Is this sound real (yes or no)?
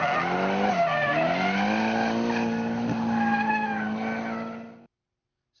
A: yes